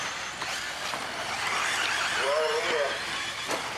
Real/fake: real